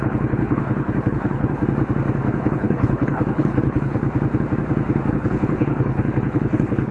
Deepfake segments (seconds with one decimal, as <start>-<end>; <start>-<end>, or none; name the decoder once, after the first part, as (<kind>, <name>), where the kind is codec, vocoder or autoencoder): 0.0-1.6 (codec, HILCodec); 2.4-4.0; 5.1-6.9